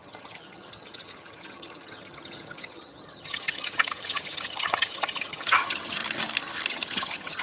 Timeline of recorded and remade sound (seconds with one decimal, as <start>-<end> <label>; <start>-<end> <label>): 0.0-6.0 remade; 6.0-6.7 recorded; 6.7-7.4 remade